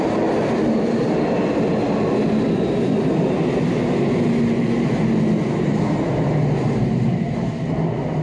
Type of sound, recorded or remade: recorded